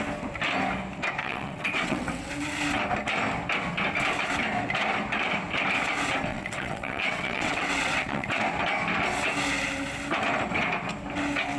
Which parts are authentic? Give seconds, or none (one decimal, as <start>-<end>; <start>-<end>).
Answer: 0.0-1.2; 2.3-6.3; 8.4-11.6